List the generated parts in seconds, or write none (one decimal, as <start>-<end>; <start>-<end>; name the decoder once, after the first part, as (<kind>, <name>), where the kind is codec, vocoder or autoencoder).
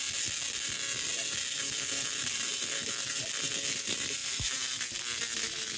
1.1-3.1 (vocoder, BigVGAN v2); 4.2-4.9